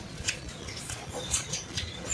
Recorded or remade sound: remade